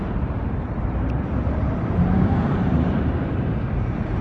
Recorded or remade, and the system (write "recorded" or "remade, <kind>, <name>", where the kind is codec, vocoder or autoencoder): remade, vocoder, BigVGAN v2